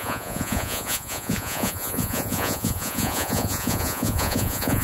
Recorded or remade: remade